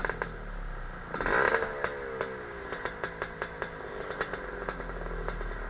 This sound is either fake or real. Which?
real